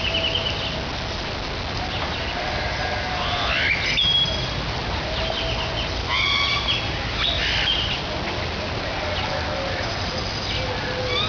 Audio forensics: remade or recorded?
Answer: recorded